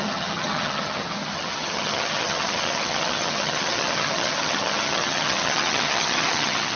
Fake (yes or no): yes